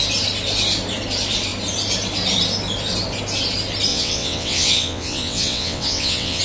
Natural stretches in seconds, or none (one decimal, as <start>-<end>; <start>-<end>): 0.0-3.9